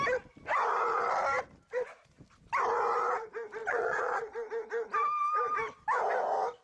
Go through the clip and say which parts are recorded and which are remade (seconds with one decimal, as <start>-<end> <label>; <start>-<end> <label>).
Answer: 0.0-3.6 recorded; 3.6-4.5 remade; 4.5-6.6 recorded